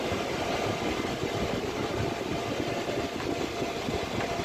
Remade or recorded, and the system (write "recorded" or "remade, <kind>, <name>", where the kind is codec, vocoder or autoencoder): recorded